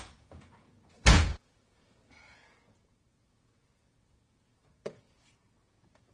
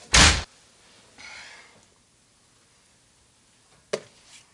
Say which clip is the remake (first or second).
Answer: first